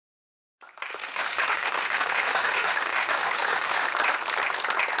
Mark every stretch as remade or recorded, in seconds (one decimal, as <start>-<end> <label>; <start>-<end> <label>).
0.0-0.9 recorded; 0.9-3.9 remade; 3.9-5.0 recorded